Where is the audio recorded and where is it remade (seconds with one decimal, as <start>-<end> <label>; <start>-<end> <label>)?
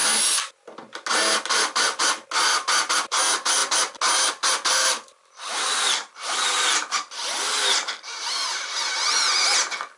0.0-10.0 recorded